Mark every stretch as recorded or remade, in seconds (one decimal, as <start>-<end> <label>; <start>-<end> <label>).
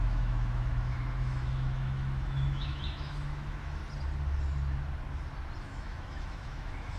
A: 0.0-3.8 remade; 3.8-5.6 recorded; 5.6-7.0 remade